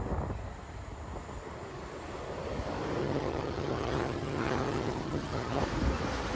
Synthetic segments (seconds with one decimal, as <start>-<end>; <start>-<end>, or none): 3.0-5.6